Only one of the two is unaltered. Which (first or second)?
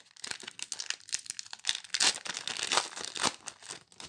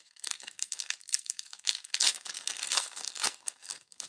first